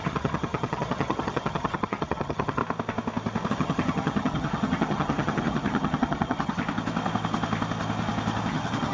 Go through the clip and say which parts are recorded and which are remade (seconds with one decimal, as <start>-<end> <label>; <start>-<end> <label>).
0.0-2.6 remade; 2.6-3.5 recorded; 3.5-6.6 remade; 6.6-8.5 recorded; 8.5-8.9 remade

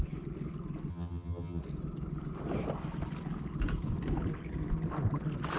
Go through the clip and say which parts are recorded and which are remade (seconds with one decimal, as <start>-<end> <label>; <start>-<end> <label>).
0.0-0.9 recorded; 0.9-1.6 remade; 1.6-5.6 recorded